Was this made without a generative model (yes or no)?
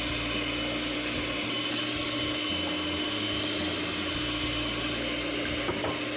yes